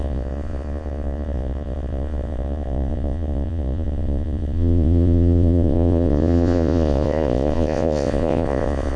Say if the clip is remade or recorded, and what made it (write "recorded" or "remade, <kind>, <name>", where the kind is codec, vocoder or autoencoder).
remade, vocoder, Vocos